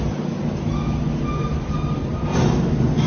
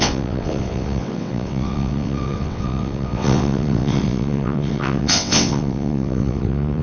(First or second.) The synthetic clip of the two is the second